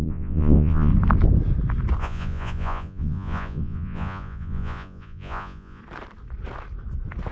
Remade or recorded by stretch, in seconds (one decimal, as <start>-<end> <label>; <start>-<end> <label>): 0.0-0.9 remade; 0.9-2.0 recorded; 2.0-5.8 remade; 5.8-7.3 recorded